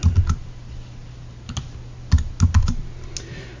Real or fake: real